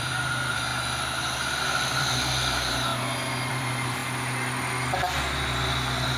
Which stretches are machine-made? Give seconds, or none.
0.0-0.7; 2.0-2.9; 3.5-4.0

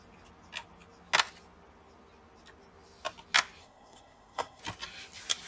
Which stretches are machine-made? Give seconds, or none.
3.6-4.6

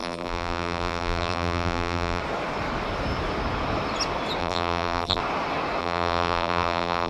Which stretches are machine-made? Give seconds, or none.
0.0-2.2; 4.4-5.2; 5.8-7.1

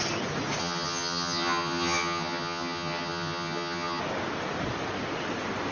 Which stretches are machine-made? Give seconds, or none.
0.6-4.0